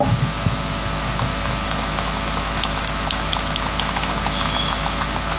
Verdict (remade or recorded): remade